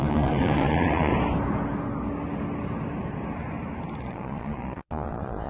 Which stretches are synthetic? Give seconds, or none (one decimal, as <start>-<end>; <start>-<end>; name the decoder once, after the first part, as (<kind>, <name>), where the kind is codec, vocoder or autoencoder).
0.0-1.1 (vocoder, Vocos); 4.0-5.5